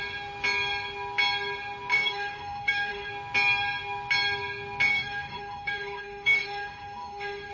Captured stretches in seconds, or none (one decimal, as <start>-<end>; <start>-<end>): 0.0-1.9; 3.1-4.9